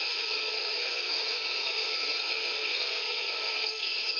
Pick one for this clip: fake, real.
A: fake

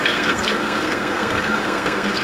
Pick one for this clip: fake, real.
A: fake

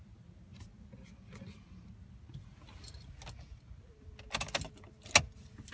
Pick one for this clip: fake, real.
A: real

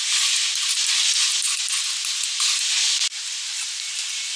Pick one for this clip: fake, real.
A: real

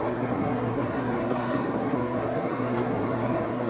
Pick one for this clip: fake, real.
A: fake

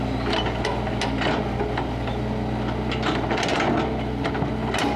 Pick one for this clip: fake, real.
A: real